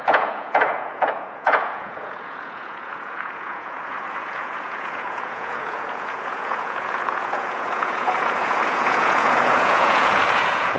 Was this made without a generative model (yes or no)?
no